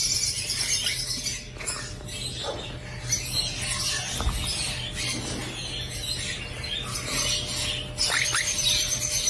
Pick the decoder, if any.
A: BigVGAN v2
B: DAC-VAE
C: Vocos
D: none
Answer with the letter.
D